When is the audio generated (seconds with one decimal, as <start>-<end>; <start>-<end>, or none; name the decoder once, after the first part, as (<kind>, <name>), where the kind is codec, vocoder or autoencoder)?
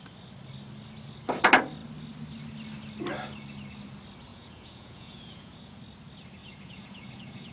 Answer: 4.3-5.8 (vocoder, Vocos); 6.4-7.5